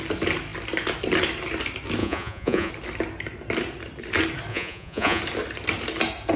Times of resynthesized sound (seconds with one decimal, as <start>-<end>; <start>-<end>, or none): 2.0-2.7; 4.5-5.2